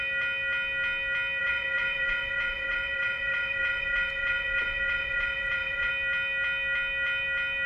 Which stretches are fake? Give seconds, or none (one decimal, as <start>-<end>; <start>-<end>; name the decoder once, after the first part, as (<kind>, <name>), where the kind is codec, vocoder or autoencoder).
1.4-5.9 (vocoder, Vocos)